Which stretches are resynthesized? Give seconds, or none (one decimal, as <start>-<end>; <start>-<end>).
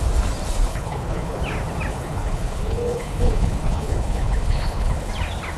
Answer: 0.7-1.4; 1.9-5.1